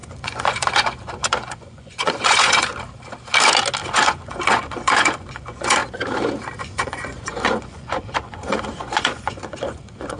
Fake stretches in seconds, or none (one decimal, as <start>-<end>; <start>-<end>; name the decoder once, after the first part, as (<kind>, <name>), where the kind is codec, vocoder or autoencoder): 0.0-2.7 (vocoder, Vocos); 3.9-5.8; 6.6-10.2